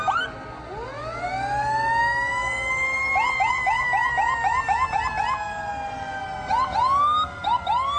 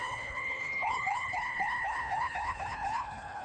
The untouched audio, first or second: first